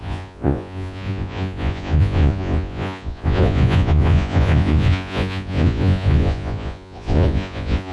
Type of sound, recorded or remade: remade